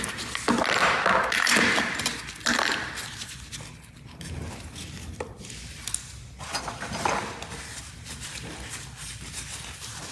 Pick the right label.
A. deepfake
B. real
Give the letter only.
B